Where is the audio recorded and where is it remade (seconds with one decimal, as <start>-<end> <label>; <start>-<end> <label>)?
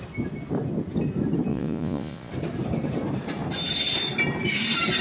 0.0-1.5 recorded; 1.5-2.3 remade; 2.3-5.0 recorded